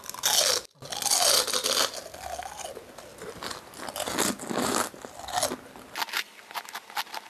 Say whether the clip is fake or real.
real